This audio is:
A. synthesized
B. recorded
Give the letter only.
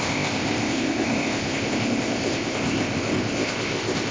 A